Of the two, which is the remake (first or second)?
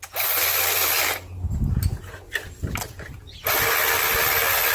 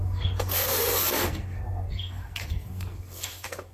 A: second